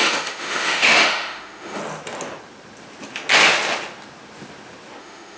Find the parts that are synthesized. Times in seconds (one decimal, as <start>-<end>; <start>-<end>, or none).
0.0-1.8; 5.0-5.4